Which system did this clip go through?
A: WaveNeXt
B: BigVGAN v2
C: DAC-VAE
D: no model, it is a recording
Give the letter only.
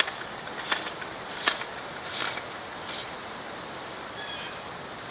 B